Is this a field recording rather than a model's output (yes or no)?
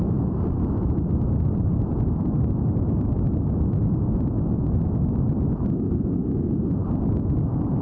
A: yes